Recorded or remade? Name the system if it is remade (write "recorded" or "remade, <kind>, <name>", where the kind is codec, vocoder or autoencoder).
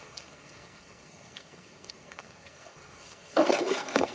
remade, codec, SNAC